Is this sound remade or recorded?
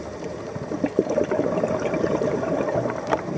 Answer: remade